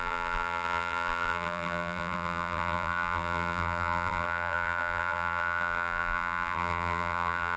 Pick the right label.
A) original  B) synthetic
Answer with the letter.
B